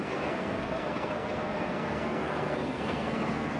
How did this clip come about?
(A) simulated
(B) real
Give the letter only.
A